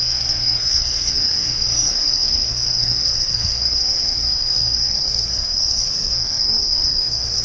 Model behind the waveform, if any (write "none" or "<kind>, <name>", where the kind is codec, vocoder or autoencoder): codec, SNAC